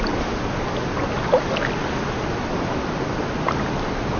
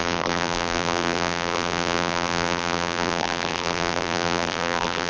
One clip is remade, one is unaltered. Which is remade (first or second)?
second